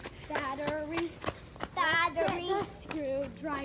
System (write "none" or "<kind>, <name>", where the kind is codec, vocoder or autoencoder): none